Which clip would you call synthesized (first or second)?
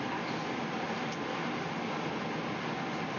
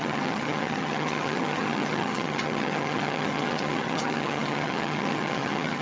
second